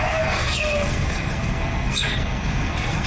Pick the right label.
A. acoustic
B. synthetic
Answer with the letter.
B